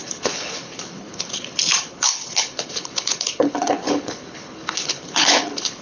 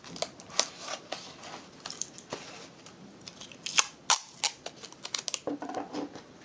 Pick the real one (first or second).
second